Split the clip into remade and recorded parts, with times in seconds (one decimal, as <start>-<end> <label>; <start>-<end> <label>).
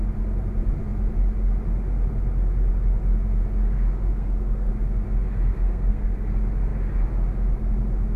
0.0-4.1 recorded; 4.1-4.7 remade; 4.7-5.5 recorded; 5.5-6.3 remade; 6.3-8.2 recorded